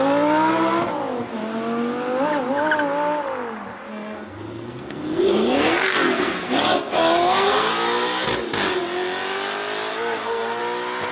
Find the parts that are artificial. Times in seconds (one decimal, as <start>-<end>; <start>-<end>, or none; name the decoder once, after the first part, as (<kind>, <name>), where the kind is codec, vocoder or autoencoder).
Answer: 3.9-7.7 (codec, SNAC); 9.9-10.6